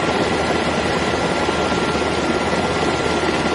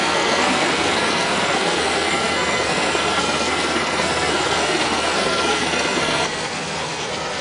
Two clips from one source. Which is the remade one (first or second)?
second